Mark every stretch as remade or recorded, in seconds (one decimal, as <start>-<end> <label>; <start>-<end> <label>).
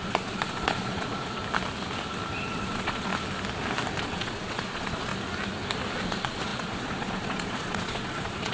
0.0-1.4 remade; 1.4-2.5 recorded; 2.5-3.1 remade; 3.1-4.0 recorded; 4.0-5.1 remade; 5.1-5.9 recorded; 5.9-8.5 remade